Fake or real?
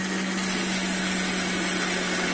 real